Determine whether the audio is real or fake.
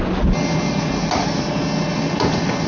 real